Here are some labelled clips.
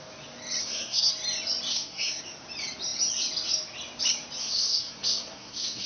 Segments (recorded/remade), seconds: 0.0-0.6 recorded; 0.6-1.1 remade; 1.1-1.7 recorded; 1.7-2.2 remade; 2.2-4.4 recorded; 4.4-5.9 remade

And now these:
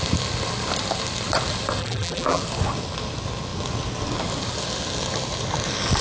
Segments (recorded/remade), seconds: 0.0-1.8 recorded; 1.8-2.4 remade; 2.4-6.0 recorded

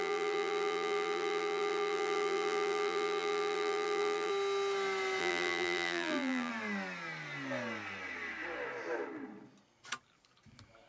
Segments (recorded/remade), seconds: 0.0-4.3 remade; 4.3-5.2 recorded; 5.2-6.5 remade; 6.5-10.9 recorded

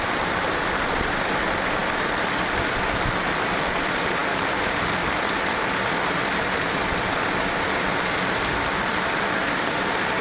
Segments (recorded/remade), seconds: 0.0-10.2 remade

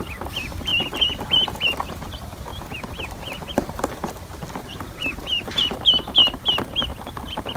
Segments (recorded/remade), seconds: 0.0-0.7 remade; 0.7-1.5 recorded; 1.5-2.5 remade; 2.5-3.1 recorded; 3.1-4.0 remade; 4.0-4.6 recorded; 4.6-6.2 remade; 6.2-7.1 recorded; 7.1-7.6 remade